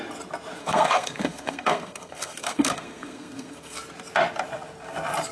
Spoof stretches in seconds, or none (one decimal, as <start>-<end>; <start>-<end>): 0.6-3.8

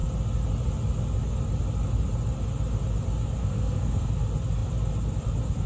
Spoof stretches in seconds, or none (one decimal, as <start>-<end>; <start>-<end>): 3.4-4.1

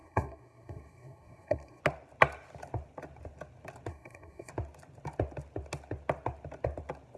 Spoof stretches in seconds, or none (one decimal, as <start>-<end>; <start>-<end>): 0.0-1.8; 3.9-4.5

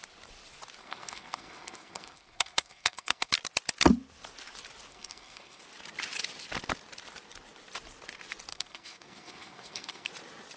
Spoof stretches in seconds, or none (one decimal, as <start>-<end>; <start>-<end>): 0.8-3.3; 4.9-5.6; 8.5-10.1